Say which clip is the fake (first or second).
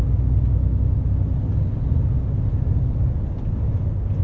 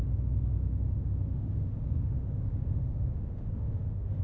second